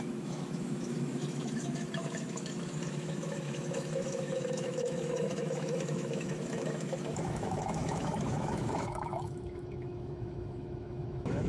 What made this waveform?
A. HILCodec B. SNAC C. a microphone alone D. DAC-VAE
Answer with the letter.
D